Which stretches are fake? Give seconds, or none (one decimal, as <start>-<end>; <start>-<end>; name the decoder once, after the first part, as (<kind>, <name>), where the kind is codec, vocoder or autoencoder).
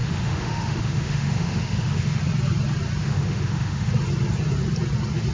0.0-2.2 (autoencoder, DAC-VAE); 3.0-3.9